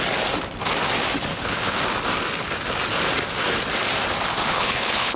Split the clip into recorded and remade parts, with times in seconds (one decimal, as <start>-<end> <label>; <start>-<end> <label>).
0.0-1.3 recorded; 1.3-1.8 remade; 1.8-4.4 recorded; 4.4-5.2 remade